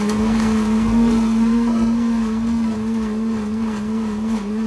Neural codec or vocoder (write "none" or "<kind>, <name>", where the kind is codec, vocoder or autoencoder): codec, SNAC